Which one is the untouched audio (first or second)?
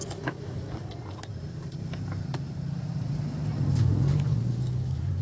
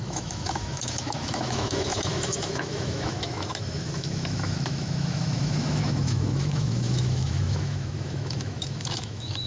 first